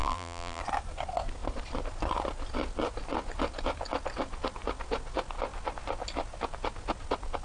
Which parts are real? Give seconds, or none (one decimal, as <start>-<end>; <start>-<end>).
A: 0.6-7.4